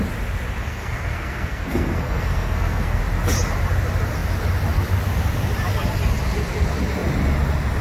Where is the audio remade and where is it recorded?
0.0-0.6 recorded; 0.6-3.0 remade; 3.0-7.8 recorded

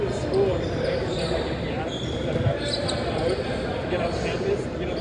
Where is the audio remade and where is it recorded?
0.0-5.0 recorded